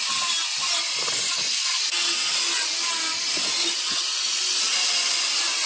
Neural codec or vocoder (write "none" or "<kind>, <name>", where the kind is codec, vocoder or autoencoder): none